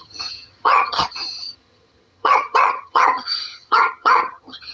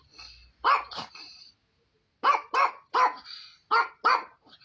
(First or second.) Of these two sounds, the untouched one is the second